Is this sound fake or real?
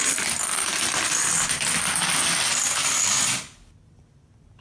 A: real